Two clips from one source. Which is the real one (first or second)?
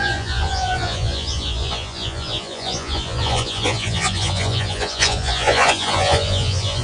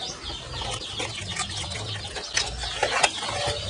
second